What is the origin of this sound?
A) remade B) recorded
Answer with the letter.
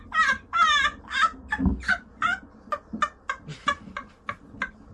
B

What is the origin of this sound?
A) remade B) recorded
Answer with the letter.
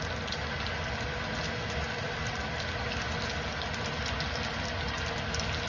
B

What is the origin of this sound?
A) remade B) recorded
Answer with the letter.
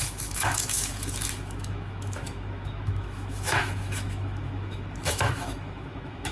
A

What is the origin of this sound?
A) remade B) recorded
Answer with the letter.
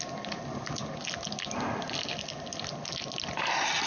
B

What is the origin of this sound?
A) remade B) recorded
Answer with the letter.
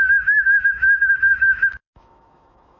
A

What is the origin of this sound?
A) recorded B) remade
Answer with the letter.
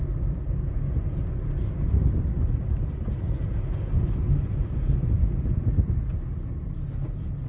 A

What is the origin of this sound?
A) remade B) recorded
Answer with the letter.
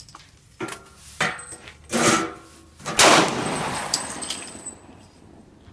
B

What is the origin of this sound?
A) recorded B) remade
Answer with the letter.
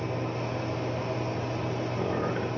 A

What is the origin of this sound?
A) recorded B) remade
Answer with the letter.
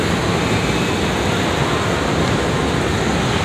A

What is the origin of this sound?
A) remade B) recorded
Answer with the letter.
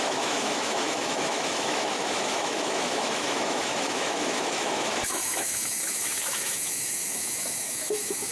A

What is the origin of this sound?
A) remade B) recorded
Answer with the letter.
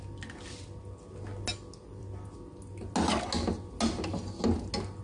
B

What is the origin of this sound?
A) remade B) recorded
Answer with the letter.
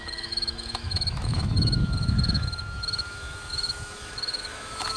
A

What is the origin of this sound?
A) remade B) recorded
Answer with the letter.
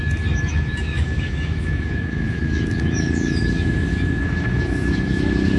A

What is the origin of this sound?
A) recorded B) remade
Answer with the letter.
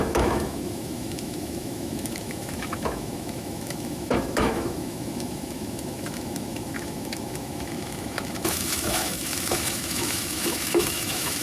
B